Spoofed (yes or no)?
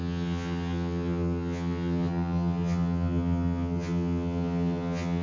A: yes